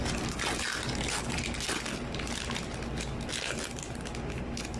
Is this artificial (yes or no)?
no